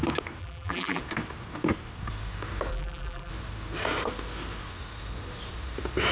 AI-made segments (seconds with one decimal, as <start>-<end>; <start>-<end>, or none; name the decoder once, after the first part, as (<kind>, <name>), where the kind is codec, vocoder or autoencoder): 0.4-1.0 (vocoder, BigVGAN v2); 2.7-3.3